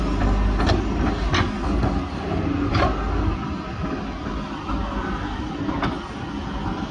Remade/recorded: recorded